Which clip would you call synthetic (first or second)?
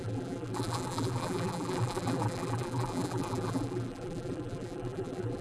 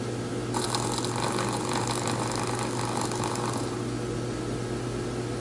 first